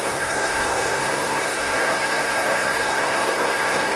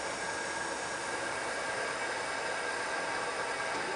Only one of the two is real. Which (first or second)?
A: second